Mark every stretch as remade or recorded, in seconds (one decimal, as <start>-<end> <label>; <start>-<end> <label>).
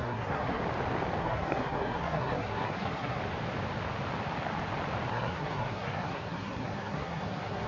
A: 0.0-0.6 remade; 0.6-1.2 recorded; 1.2-3.2 remade; 3.2-5.1 recorded; 5.1-7.7 remade